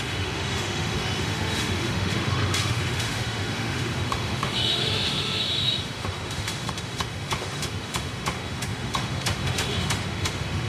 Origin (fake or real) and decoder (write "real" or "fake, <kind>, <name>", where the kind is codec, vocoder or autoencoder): fake, autoencoder, DAC-VAE